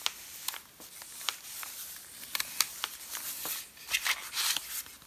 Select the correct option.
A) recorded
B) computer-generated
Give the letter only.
A